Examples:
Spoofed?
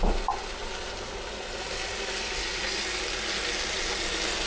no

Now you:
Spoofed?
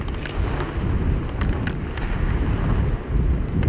no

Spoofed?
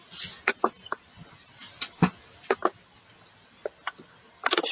no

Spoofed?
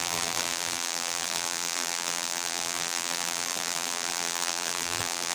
yes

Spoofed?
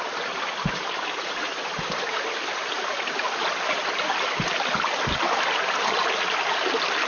no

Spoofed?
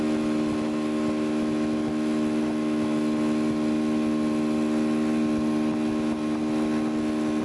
no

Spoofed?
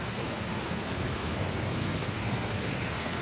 yes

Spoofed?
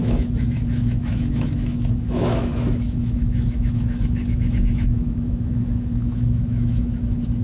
yes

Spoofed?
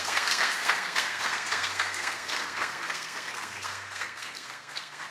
yes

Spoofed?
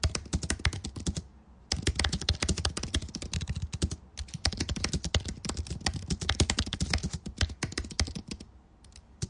no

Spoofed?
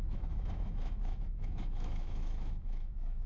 yes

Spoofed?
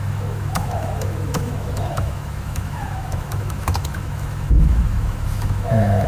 yes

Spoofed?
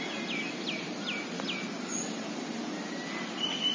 no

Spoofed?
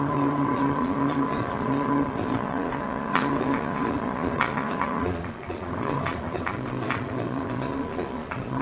yes